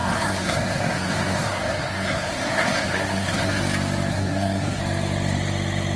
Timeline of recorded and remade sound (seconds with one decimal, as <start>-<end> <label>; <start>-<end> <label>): 0.0-3.6 remade; 3.6-4.1 recorded; 4.1-4.8 remade; 4.8-6.0 recorded